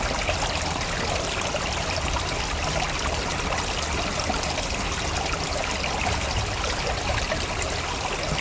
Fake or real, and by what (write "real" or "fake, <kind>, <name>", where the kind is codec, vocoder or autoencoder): real